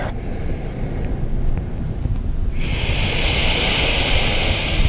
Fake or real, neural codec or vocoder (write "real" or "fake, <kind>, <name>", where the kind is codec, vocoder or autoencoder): real